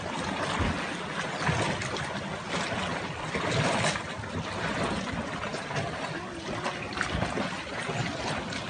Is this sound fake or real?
real